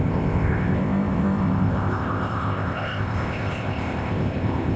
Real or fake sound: fake